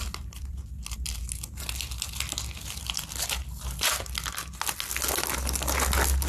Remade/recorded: recorded